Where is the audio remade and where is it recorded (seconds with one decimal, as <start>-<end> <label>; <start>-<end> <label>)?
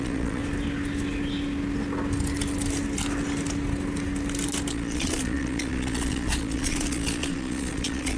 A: 0.0-0.4 remade; 0.4-4.7 recorded; 4.7-8.2 remade